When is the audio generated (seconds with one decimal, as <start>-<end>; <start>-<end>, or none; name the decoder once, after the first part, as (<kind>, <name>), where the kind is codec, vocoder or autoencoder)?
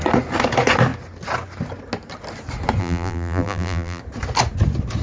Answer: 2.8-4.0 (vocoder, BigVGAN v2)